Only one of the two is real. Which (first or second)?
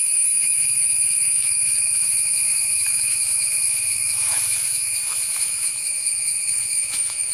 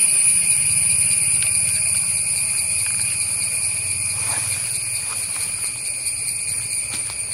second